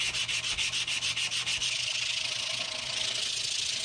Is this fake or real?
real